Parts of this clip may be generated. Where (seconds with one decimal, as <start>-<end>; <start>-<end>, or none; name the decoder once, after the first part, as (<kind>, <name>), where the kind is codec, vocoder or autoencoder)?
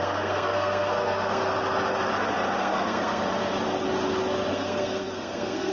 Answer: 0.0-1.4 (codec, SNAC); 2.6-3.2; 4.5-5.7